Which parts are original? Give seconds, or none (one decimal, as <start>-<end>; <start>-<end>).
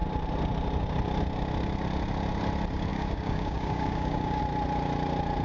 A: 0.0-2.9; 4.4-5.4